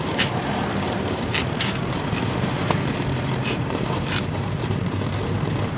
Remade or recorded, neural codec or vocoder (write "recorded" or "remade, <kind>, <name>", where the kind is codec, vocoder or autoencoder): remade, vocoder, BigVGAN v2